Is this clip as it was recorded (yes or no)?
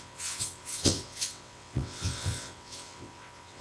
no